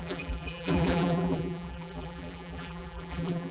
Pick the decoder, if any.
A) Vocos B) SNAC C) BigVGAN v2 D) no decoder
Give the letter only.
C